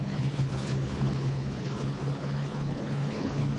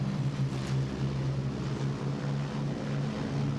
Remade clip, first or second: first